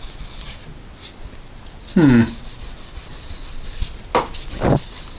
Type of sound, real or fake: real